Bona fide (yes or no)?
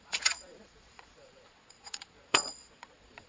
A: no